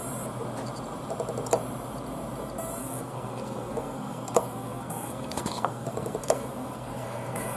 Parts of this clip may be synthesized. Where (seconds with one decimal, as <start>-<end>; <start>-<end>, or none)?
2.8-7.6